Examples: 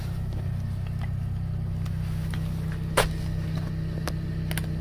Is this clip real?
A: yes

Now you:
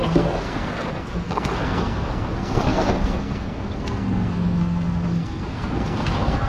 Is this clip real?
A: no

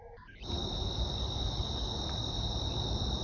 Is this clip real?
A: yes